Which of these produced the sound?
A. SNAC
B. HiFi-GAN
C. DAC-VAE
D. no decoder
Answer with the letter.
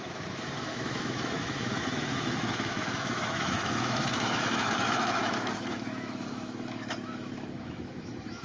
C